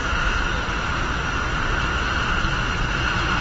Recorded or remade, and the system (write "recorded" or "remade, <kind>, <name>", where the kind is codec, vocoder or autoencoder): recorded